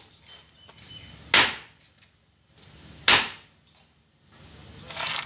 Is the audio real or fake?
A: real